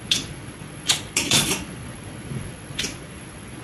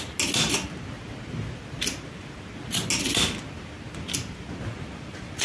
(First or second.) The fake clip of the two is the first